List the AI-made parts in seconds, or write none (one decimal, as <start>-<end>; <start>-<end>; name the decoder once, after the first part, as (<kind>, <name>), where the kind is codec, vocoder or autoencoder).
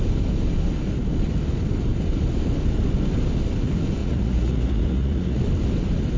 4.0-5.4 (vocoder, Vocos)